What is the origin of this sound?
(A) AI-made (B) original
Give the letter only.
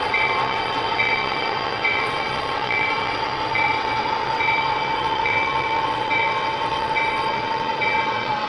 A